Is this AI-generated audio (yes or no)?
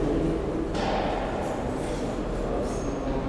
no